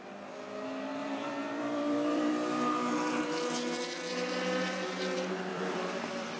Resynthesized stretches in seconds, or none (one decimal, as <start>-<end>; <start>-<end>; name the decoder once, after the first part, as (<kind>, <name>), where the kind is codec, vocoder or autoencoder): 1.0-2.3 (vocoder, BigVGAN v2); 5.5-6.4